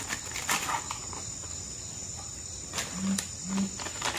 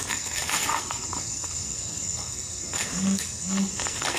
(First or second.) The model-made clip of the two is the second